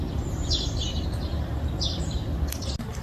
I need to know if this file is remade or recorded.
recorded